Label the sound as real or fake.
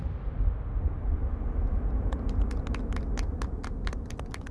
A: real